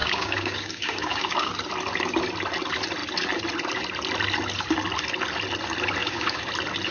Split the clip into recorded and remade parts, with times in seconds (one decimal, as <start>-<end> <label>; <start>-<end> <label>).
0.0-1.5 remade; 1.5-6.0 recorded; 6.0-6.5 remade; 6.5-6.9 recorded